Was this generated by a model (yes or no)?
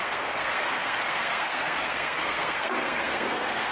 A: yes